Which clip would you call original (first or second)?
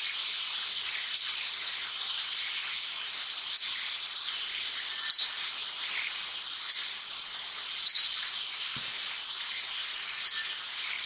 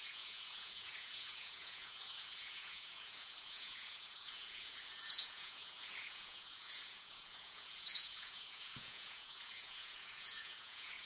first